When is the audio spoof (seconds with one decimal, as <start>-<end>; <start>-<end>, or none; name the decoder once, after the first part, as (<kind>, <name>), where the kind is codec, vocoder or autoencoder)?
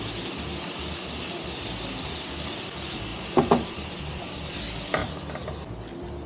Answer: 3.1-3.8 (vocoder, BigVGAN v2)